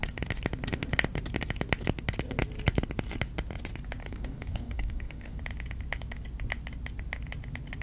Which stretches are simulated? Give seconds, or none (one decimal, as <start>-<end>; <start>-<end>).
4.0-5.4